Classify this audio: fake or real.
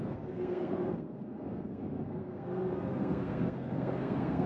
fake